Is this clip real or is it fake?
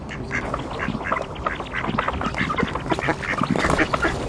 real